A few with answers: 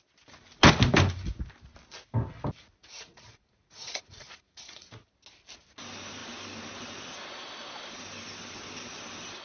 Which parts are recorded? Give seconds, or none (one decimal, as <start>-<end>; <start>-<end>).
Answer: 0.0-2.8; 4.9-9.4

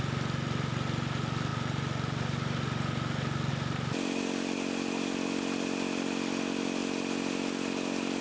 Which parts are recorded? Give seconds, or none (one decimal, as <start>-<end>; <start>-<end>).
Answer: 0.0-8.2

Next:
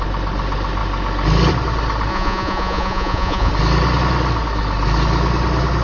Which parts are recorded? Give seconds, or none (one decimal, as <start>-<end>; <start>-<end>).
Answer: 0.0-2.1; 3.5-5.8